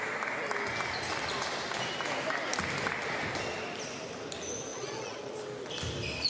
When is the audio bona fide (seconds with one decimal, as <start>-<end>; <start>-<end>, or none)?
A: 0.0-4.7; 5.3-6.3

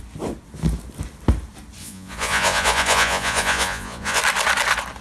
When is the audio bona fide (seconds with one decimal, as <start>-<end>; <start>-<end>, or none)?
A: 0.0-1.8; 4.2-5.0

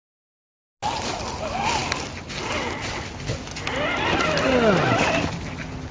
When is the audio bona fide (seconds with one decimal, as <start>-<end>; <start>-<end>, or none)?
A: 0.0-5.9

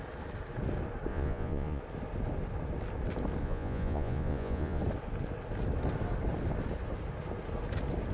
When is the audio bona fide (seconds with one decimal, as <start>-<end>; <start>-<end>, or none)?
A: 0.0-1.1; 1.8-3.4; 4.8-8.1